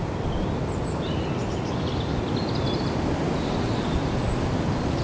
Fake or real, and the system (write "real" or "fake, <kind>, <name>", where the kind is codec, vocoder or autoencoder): real